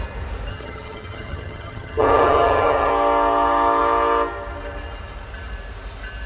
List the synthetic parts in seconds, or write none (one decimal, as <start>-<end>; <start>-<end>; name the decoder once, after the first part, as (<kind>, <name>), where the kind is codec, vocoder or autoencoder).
0.5-2.9 (vocoder, HiFi-GAN)